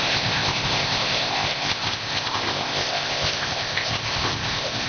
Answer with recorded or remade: remade